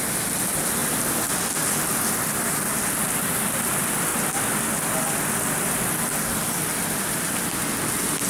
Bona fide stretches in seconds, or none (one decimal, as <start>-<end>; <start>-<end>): 0.0-0.8; 2.1-4.1; 5.9-8.3

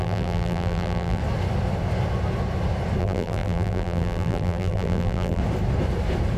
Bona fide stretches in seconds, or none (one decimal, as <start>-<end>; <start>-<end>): 1.2-3.0; 5.4-6.4

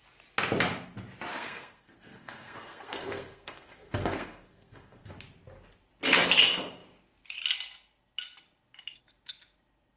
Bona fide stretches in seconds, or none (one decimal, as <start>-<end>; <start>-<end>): 0.0-1.3; 5.1-10.0

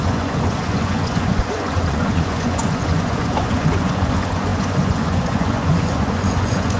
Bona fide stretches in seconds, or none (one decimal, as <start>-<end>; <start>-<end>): none

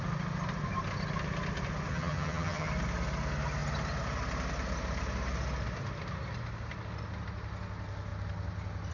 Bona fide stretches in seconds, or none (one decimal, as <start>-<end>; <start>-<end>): 0.0-1.9; 2.7-8.9